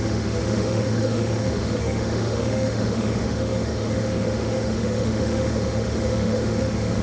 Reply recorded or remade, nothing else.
remade